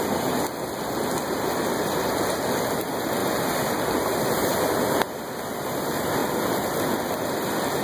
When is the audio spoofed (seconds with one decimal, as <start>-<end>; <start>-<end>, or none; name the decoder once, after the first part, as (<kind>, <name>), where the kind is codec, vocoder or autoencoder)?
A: none